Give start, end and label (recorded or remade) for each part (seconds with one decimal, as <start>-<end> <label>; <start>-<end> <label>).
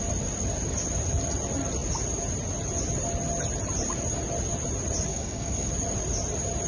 0.0-5.1 recorded; 5.1-5.7 remade; 5.7-6.7 recorded